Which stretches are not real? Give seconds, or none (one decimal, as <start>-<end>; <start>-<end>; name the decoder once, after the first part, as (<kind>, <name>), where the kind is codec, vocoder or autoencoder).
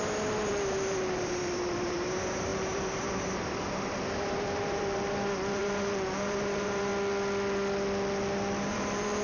0.0-6.9 (vocoder, BigVGAN v2); 8.7-9.2